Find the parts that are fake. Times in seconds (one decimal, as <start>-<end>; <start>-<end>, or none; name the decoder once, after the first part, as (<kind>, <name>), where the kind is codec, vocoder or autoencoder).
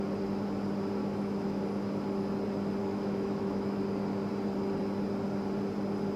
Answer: 1.0-1.6 (autoencoder, DAC-VAE); 2.8-3.8